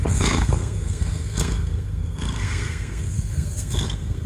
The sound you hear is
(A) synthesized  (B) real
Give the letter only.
A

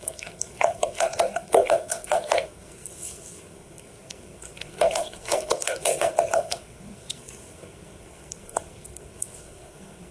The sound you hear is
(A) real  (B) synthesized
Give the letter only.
B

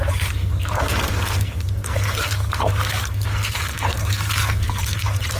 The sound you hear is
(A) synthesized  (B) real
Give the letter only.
A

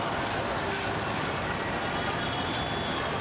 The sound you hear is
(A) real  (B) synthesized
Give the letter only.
A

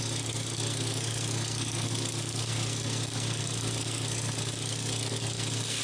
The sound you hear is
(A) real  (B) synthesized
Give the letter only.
B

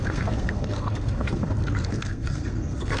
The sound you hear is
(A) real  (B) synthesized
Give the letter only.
B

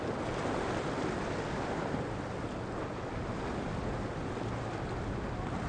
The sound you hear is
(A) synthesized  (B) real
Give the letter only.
B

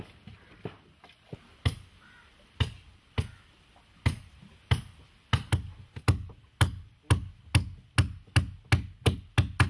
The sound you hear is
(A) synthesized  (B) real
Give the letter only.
B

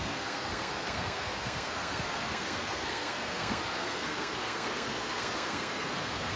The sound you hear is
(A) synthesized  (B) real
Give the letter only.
A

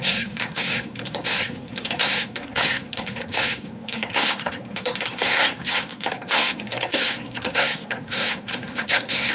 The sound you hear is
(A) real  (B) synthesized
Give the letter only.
B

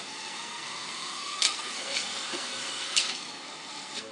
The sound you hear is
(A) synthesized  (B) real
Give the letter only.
A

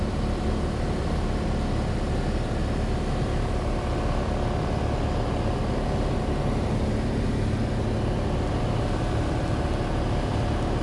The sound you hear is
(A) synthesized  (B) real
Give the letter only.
B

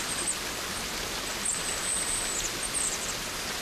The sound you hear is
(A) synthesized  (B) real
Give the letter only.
B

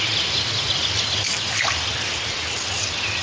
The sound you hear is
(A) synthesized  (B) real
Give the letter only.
B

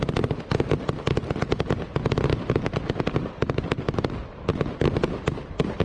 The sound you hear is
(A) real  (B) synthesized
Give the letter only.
A